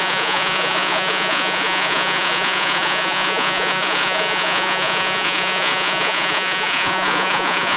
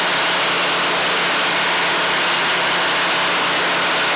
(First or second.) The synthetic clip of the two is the first